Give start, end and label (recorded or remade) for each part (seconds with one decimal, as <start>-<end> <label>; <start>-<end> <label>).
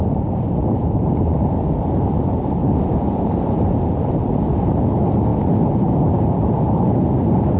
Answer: 0.0-0.6 recorded; 0.6-1.5 remade; 1.5-2.6 recorded; 2.6-4.3 remade; 4.3-7.6 recorded